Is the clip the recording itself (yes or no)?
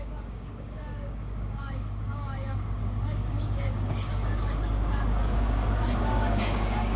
no